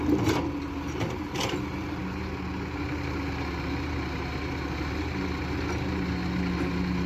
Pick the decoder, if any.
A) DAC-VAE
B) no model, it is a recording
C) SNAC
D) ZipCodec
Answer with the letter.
B